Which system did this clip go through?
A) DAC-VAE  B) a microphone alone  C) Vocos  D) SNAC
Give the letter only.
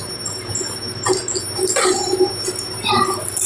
B